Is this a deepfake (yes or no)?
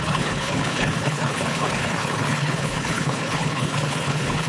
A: yes